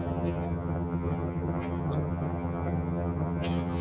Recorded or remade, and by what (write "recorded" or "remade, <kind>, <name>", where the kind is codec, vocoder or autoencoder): remade, vocoder, HiFi-GAN